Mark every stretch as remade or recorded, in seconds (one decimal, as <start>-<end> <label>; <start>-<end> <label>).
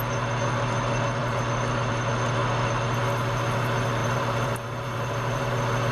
0.0-1.2 recorded; 1.2-1.9 remade; 1.9-4.0 recorded; 4.0-5.5 remade; 5.5-5.9 recorded